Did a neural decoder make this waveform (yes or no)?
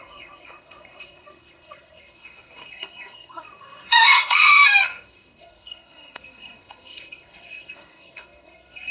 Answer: yes